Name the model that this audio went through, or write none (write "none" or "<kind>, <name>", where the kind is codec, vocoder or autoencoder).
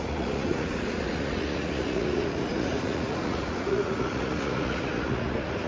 vocoder, Vocos